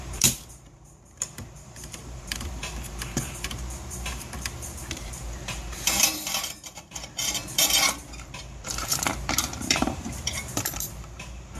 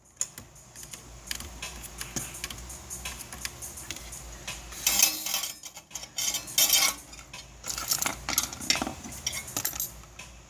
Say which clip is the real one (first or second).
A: second